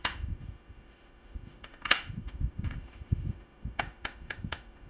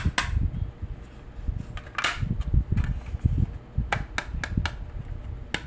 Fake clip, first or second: first